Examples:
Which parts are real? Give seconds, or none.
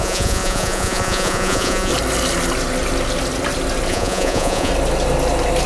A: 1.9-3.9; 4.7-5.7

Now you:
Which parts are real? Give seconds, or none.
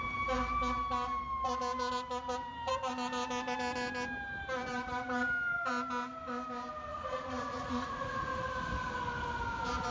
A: 0.0-6.9; 8.4-9.9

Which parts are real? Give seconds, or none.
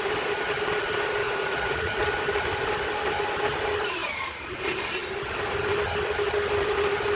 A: 0.0-1.2; 2.0-4.0; 4.6-7.2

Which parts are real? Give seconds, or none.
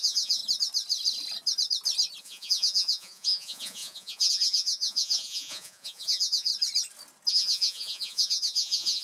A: 0.4-2.2; 6.5-7.3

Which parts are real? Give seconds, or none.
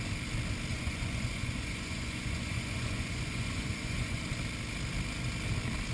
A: 0.0-0.7; 4.2-5.9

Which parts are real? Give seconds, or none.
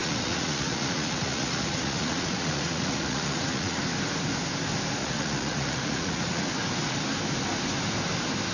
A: 3.8-5.0; 6.4-8.5